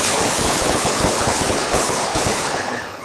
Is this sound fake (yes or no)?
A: yes